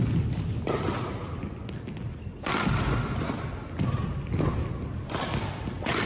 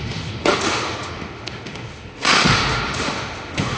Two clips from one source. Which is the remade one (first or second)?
second